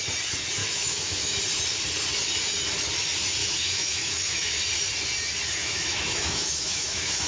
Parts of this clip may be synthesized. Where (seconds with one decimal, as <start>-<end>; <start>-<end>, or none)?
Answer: 0.6-1.4; 3.4-4.5; 5.6-7.3